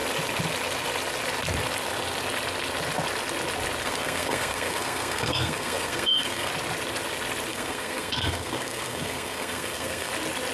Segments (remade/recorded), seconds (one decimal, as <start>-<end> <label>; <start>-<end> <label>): 0.0-3.8 recorded; 3.8-6.5 remade; 6.5-7.5 recorded; 7.5-10.1 remade; 10.1-10.5 recorded